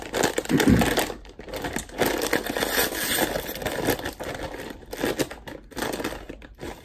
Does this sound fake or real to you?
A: real